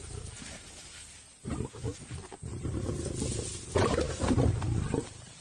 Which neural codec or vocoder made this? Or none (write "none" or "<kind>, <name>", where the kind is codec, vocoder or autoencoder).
none